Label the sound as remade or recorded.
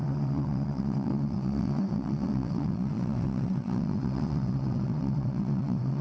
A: remade